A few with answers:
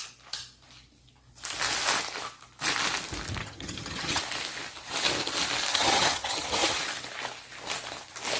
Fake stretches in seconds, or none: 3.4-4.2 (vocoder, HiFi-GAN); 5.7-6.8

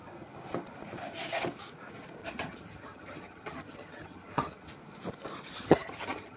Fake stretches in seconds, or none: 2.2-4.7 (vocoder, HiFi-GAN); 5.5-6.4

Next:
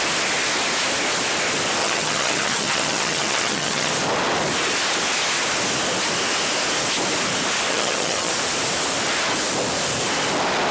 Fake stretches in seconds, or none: 1.8-3.9 (vocoder, HiFi-GAN); 7.7-8.3

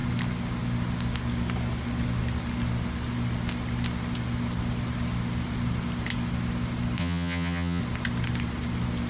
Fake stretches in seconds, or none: 7.0-7.8 (vocoder, HiFi-GAN)